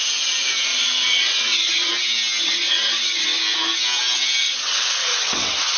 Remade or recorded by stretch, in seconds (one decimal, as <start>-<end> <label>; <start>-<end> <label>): 0.0-0.7 recorded; 0.7-1.9 remade; 1.9-2.4 recorded; 2.4-3.4 remade; 3.4-4.4 recorded; 4.4-5.8 remade